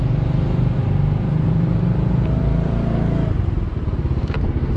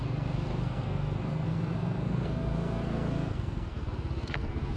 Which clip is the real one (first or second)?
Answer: first